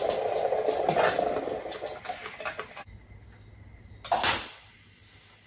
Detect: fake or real real